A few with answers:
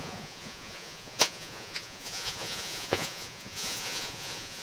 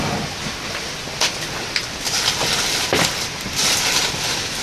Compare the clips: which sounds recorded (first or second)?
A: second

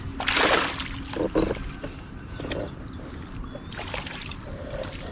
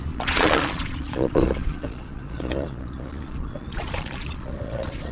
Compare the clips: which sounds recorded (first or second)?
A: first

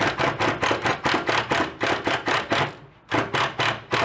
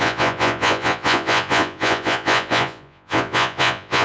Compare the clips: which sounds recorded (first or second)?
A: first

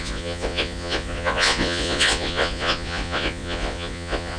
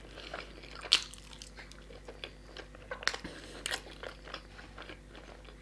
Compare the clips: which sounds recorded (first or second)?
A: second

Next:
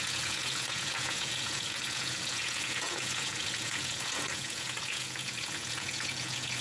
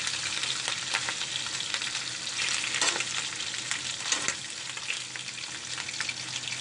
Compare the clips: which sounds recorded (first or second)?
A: second